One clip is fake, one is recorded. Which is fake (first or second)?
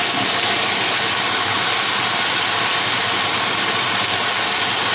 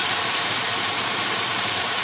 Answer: second